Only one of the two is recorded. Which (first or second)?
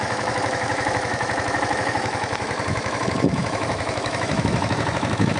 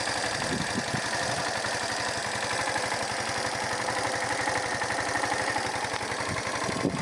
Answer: second